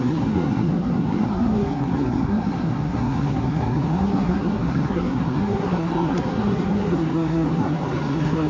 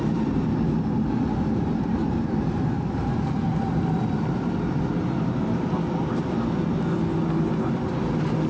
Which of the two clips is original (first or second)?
second